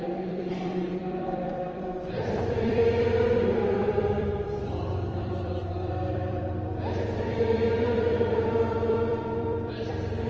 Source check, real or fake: fake